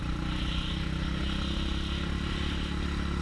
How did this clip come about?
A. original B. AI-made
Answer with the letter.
A